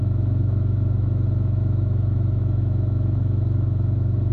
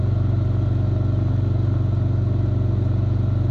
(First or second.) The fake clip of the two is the first